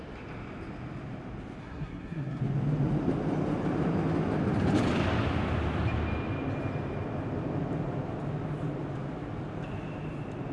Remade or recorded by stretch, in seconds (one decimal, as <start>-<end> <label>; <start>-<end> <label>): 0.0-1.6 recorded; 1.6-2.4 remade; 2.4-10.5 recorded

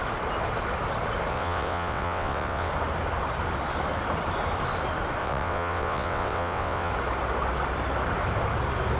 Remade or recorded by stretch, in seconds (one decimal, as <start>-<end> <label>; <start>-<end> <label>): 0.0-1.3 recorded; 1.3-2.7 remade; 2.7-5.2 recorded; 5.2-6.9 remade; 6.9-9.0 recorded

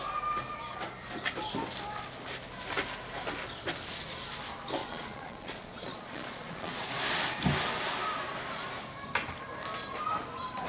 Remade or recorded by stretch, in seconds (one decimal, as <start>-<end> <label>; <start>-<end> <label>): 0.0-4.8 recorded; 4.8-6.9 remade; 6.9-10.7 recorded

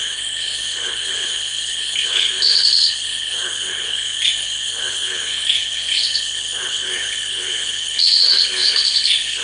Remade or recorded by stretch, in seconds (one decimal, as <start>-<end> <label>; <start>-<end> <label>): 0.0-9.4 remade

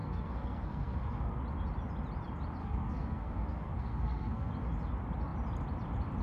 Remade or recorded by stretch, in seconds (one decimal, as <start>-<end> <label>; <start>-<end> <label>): 0.0-1.4 remade; 1.4-2.6 recorded; 2.6-4.5 remade; 4.5-6.2 recorded

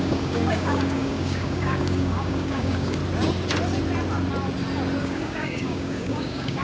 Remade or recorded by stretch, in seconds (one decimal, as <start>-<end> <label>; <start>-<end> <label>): 0.0-3.0 remade; 3.0-5.0 recorded; 5.0-6.6 remade